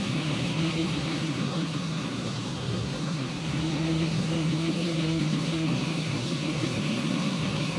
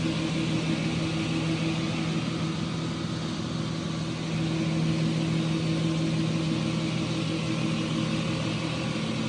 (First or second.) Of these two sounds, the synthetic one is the first